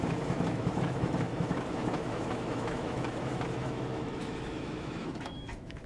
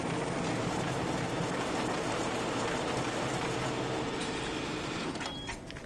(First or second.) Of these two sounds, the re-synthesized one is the first